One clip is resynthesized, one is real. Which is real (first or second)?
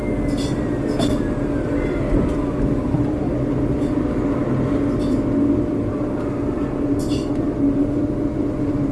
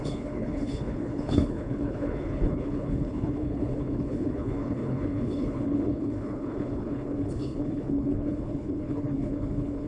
first